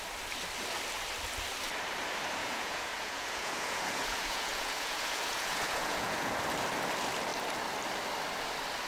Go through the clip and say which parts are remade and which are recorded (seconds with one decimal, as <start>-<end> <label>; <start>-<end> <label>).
0.0-2.4 recorded; 2.4-6.3 remade; 6.3-8.9 recorded